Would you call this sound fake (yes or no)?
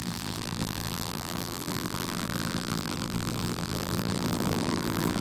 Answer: yes